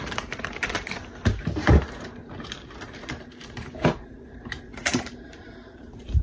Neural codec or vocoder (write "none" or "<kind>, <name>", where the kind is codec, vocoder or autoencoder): vocoder, BigVGAN v2